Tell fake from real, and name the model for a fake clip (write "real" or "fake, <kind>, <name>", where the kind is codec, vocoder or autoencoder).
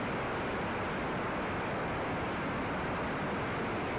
real